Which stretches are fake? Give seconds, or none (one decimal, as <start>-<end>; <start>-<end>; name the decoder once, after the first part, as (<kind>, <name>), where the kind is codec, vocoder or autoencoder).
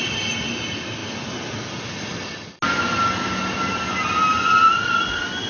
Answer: none